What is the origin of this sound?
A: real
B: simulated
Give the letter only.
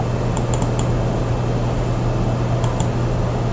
A